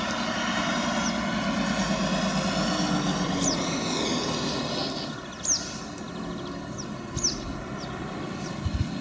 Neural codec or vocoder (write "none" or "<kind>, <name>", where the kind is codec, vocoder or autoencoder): none